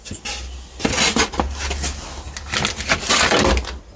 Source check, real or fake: real